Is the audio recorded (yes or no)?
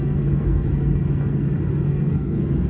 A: no